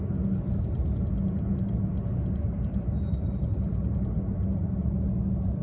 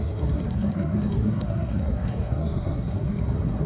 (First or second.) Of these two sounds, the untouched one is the first